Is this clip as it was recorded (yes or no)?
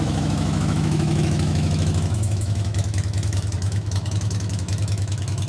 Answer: no